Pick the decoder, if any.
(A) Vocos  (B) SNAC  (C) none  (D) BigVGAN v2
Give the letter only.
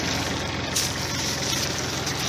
C